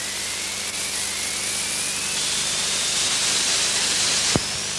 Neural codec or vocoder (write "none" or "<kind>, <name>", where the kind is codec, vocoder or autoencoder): none